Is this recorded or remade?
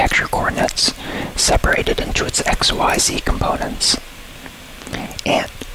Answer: remade